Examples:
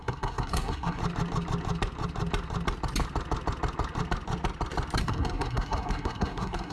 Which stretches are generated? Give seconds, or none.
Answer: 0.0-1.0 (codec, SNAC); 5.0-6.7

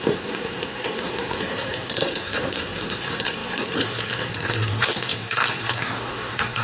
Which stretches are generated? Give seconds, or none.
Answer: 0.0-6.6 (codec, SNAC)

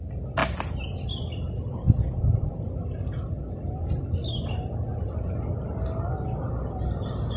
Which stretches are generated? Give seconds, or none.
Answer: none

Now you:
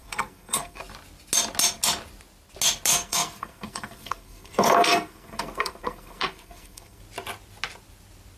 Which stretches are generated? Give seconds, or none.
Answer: 0.0-0.8 (codec, SNAC); 2.9-7.0